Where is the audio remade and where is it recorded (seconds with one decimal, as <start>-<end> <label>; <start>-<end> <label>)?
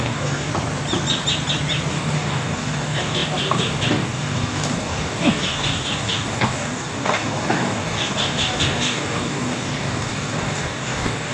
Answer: 0.0-0.5 remade; 0.5-1.9 recorded; 1.9-11.3 remade